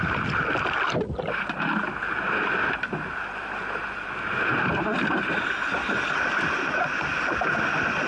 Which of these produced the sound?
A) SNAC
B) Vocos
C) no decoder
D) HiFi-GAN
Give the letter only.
C